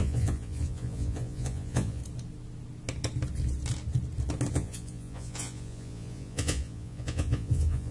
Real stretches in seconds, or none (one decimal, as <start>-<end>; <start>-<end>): 2.0-4.5

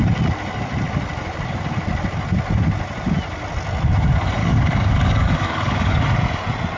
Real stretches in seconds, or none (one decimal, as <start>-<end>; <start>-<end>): 0.0-4.4; 6.0-6.8

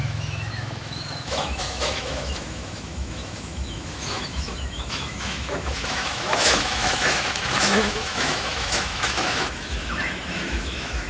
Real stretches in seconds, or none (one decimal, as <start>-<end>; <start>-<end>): none